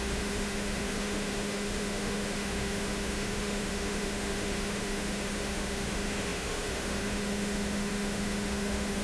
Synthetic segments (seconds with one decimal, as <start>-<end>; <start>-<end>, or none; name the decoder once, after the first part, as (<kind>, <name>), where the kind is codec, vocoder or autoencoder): 0.0-9.0 (autoencoder, DAC-VAE)